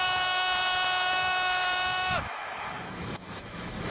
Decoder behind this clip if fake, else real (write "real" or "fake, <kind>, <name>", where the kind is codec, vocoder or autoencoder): fake, autoencoder, DAC-VAE